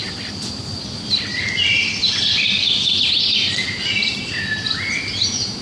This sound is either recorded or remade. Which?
recorded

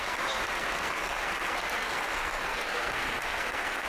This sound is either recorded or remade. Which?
remade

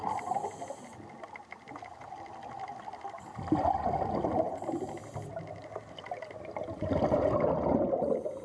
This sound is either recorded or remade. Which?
recorded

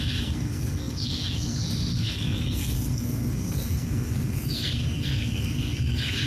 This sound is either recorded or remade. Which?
remade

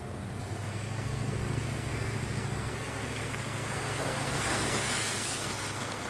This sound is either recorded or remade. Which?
remade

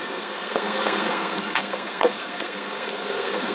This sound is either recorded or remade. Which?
remade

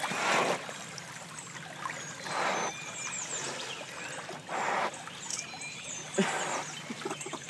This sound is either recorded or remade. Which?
recorded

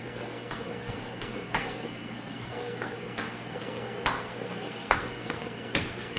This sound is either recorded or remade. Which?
remade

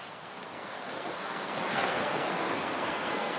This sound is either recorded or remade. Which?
remade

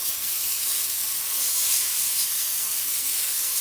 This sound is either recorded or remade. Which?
remade